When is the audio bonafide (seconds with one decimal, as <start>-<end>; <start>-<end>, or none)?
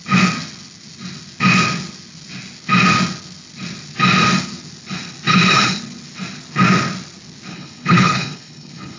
0.0-5.3; 5.8-7.5